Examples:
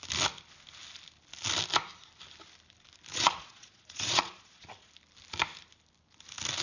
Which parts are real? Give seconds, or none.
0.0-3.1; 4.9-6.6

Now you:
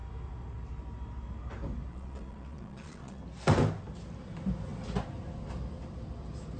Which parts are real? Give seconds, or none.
0.0-1.9; 3.2-6.6

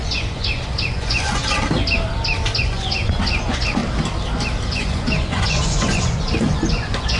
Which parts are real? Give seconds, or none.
1.4-2.6; 3.8-4.7

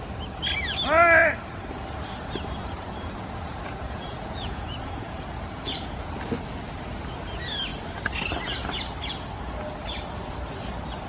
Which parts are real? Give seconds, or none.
0.0-2.6; 6.1-11.1

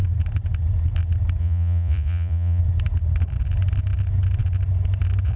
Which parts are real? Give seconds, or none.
0.0-1.4; 2.6-5.4

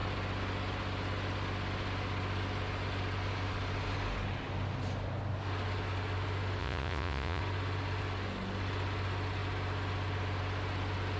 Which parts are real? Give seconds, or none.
0.0-6.6; 7.4-11.2